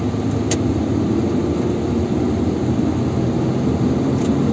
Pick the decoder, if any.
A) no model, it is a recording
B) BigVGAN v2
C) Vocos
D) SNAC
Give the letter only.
A